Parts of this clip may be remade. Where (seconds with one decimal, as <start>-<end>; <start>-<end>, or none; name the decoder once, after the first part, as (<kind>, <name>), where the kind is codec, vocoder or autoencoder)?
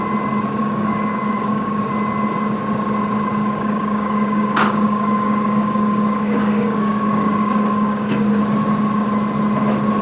0.6-1.8 (codec, DAC); 3.4-8.4